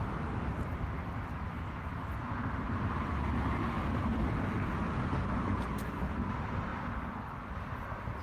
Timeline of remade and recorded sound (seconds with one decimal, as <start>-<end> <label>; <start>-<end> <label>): 0.0-1.3 recorded; 1.3-1.9 remade; 1.9-8.2 recorded